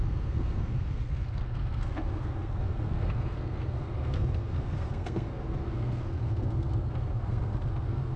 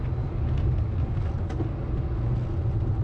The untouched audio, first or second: second